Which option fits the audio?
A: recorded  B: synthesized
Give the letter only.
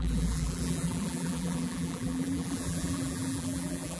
B